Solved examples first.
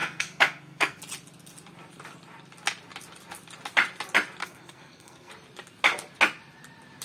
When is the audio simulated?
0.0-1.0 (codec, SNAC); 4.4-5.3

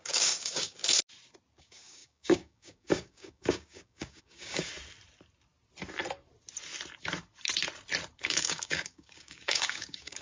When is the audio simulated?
0.0-0.8 (codec, DAC); 1.6-4.7; 8.2-10.2

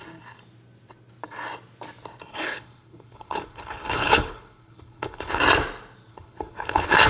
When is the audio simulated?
2.3-5.4 (codec, HILCodec); 6.1-7.1

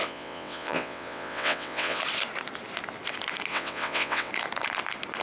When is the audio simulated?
0.0-2.0 (vocoder, WaveNeXt); 3.5-4.3

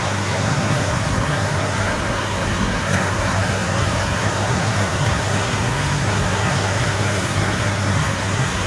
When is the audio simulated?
0.0-8.7 (codec, SNAC)

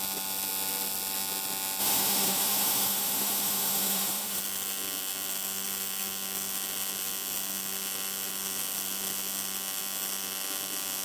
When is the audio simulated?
1.8-4.4 (autoencoder, DAC-VAE)